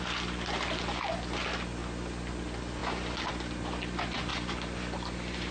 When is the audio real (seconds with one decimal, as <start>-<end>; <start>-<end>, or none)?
0.0-4.3

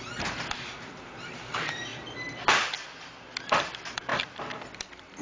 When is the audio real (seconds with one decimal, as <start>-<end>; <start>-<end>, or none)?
1.9-3.4; 4.1-5.2